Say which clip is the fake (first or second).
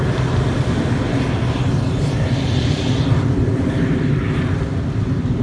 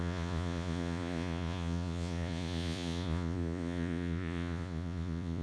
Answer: second